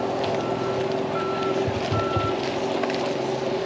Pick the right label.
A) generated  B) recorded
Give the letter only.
B